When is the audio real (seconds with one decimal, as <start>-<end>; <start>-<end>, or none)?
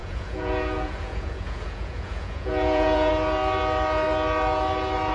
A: 3.1-5.1